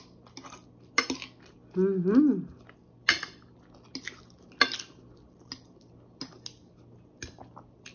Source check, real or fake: real